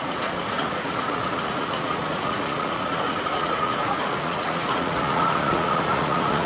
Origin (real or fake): fake